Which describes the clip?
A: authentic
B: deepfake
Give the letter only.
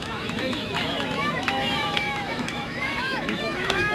B